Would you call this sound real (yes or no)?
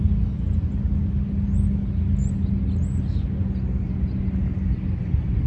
yes